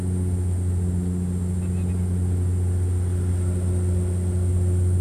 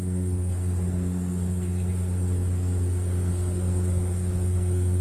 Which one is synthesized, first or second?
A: second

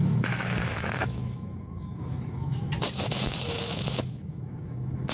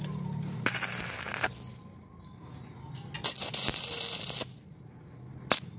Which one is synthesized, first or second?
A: first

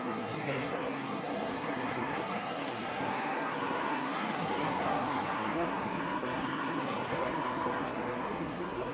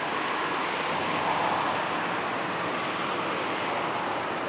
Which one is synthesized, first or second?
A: first